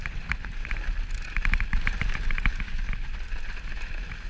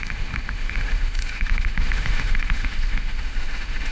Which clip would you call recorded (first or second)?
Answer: first